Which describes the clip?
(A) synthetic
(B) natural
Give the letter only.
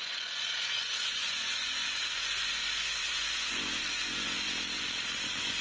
A